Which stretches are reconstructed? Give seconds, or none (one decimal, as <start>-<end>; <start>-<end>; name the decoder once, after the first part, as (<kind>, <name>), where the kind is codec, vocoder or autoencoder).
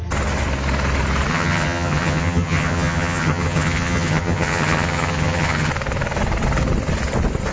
1.3-5.7 (vocoder, HiFi-GAN)